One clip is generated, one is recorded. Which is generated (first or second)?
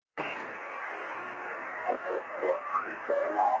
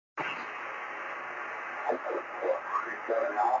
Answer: first